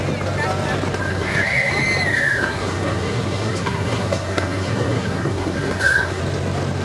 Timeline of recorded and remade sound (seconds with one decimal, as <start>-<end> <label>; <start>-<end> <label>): 0.0-1.1 recorded; 1.1-1.7 remade; 1.7-2.1 recorded; 2.1-6.2 remade; 6.2-6.8 recorded